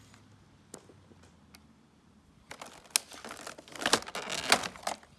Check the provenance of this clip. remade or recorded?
recorded